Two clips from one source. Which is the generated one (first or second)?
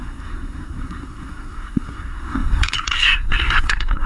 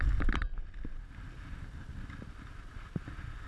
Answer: first